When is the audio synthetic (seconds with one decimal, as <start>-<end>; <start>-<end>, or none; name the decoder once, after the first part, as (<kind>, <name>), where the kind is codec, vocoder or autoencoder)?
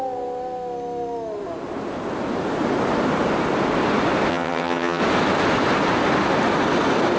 4.3-5.0 (vocoder, HiFi-GAN)